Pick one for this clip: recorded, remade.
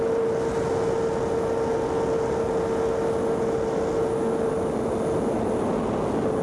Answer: recorded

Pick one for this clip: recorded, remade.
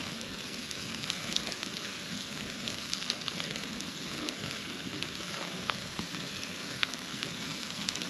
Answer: remade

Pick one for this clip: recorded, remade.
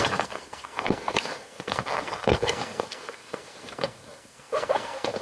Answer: remade